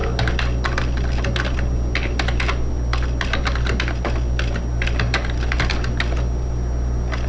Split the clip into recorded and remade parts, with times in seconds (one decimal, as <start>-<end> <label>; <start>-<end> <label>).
0.0-7.3 recorded